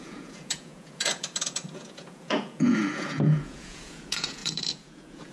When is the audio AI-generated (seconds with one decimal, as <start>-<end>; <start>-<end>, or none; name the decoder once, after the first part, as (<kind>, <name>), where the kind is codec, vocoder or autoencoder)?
0.0-5.3 (vocoder, Vocos)